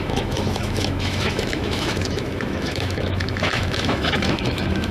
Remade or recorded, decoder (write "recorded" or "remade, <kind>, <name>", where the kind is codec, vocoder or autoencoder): remade, autoencoder, DAC-VAE